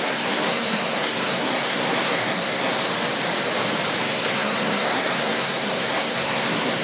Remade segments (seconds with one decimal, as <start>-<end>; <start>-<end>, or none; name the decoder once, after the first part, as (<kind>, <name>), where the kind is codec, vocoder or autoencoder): 0.0-2.9 (codec, SNAC); 4.0-6.8